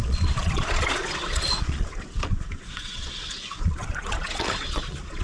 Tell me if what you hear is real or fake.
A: fake